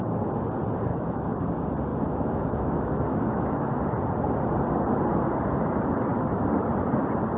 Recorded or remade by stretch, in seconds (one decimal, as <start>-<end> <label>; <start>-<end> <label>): 0.0-0.9 recorded; 0.9-1.4 remade; 1.4-1.9 recorded; 1.9-3.8 remade; 3.8-7.4 recorded